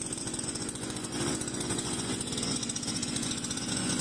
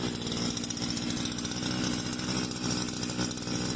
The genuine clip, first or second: second